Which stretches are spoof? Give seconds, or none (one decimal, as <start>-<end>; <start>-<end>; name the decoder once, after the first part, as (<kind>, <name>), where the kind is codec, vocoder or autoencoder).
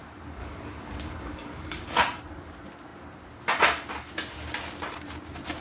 0.4-2.0 (codec, DAC)